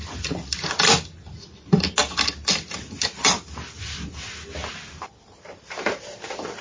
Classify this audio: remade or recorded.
recorded